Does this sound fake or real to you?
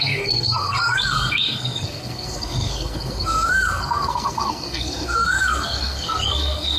fake